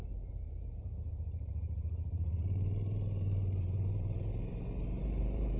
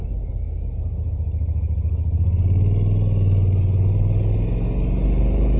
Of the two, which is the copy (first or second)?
first